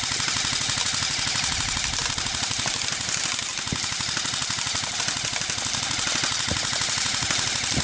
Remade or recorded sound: recorded